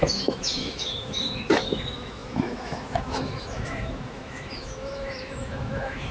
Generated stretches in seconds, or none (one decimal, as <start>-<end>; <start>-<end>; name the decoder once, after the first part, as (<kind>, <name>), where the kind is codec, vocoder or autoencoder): 0.0-6.1 (autoencoder, DAC-VAE)